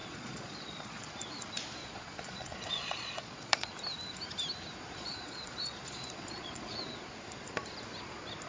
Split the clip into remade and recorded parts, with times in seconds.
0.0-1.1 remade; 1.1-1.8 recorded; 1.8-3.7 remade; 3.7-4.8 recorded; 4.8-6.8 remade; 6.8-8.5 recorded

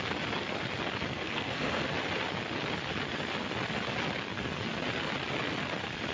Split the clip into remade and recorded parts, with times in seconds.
0.0-1.1 recorded; 1.1-1.9 remade; 1.9-6.1 recorded

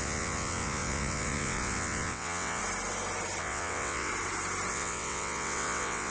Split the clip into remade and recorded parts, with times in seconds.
0.0-2.6 remade; 2.6-3.4 recorded; 3.4-4.1 remade; 4.1-4.7 recorded; 4.7-6.1 remade